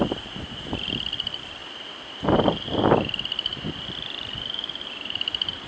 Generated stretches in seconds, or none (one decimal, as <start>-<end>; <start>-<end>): 0.0-1.6; 2.9-5.7